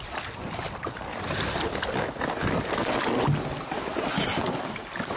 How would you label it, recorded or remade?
recorded